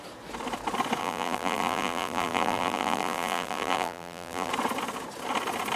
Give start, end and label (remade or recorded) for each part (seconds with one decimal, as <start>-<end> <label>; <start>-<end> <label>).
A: 0.0-1.0 recorded; 1.0-4.5 remade; 4.5-5.8 recorded